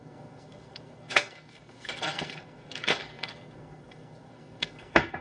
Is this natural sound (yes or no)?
no